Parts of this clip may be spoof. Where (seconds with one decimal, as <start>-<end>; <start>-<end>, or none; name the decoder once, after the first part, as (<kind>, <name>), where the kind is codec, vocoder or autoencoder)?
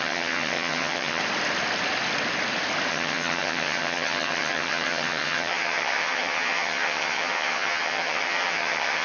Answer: 0.0-1.2 (vocoder, HiFi-GAN); 2.9-9.0